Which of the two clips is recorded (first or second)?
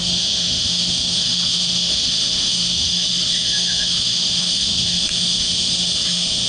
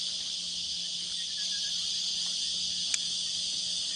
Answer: second